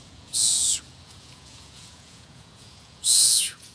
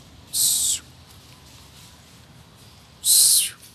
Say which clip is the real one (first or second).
second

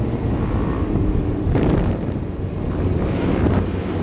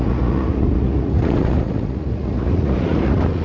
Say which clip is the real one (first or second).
first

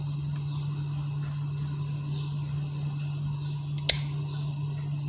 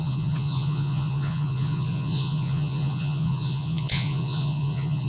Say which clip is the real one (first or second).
first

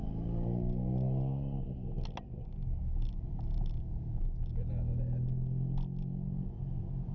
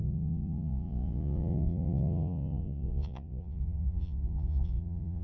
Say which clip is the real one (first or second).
first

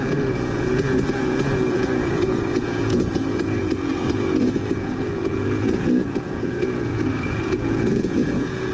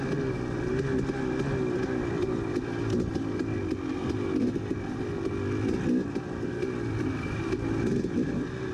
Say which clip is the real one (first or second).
second